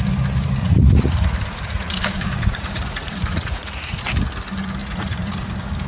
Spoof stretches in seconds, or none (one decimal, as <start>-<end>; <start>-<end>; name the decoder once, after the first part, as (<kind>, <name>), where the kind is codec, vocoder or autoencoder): 0.6-4.0 (vocoder, Vocos); 4.8-5.5